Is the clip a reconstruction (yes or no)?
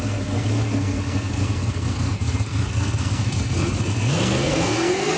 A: yes